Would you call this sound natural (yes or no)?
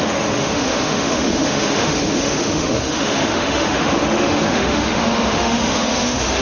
no